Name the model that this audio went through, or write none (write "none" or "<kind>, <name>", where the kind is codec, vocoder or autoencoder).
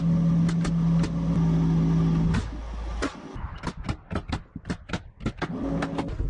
none